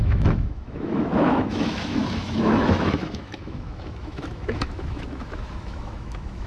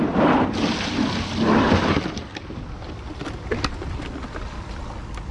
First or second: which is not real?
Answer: first